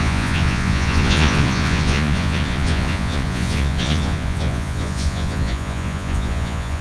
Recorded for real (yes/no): no